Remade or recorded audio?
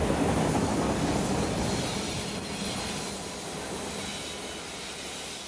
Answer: recorded